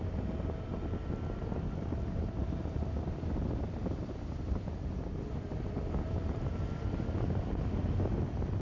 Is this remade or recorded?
recorded